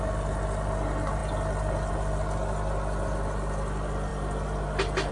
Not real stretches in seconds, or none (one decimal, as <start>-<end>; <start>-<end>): none